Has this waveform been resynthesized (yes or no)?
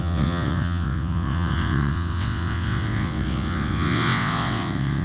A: yes